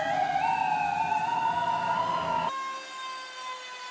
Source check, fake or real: real